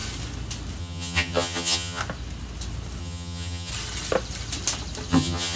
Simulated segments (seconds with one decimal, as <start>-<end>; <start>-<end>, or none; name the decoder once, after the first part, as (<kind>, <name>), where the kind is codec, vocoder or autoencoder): 0.8-2.0 (vocoder, HiFi-GAN); 3.0-3.7; 5.1-5.6